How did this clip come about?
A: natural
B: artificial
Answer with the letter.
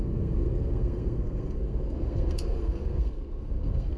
B